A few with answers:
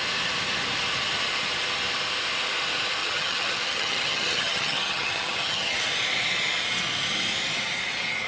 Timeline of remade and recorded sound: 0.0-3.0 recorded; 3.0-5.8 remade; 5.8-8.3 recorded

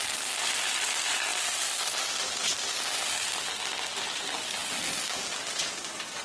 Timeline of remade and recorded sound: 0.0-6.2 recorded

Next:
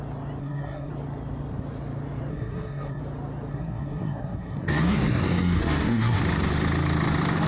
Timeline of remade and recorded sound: 0.0-0.4 recorded; 0.4-0.9 remade; 0.9-2.3 recorded; 2.3-3.0 remade; 3.0-3.5 recorded; 3.5-6.2 remade; 6.2-7.5 recorded